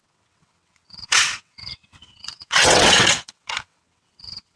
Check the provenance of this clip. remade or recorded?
remade